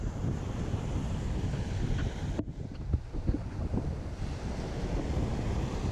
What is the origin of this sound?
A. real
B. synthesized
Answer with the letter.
A